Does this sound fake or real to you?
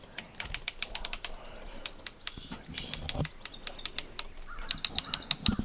real